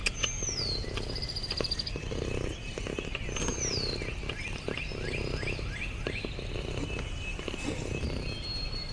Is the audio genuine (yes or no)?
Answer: yes